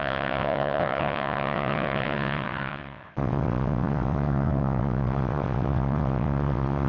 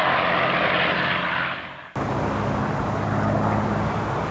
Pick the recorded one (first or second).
second